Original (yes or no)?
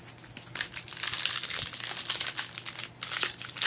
yes